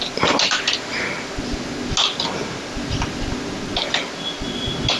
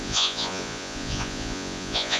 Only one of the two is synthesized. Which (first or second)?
second